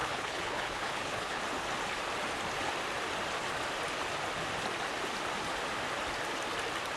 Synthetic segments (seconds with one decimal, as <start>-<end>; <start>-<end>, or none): 0.0-1.4